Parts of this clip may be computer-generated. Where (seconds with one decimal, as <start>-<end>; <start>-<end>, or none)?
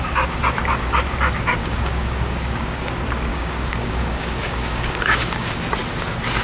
1.6-2.9; 3.3-5.5